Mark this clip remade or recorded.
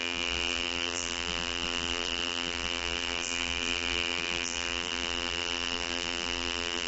remade